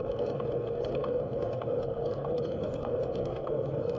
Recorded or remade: remade